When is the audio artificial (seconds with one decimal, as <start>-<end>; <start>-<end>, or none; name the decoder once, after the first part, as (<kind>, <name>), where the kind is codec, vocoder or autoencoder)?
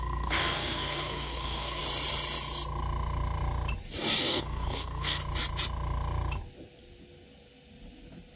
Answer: 0.0-1.8 (codec, SNAC); 4.2-5.2